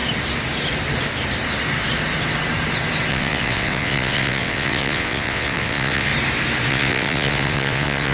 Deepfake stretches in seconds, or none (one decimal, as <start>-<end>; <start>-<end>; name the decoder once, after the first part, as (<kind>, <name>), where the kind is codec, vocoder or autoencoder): 3.1-6.1 (vocoder, WaveNeXt); 6.7-8.1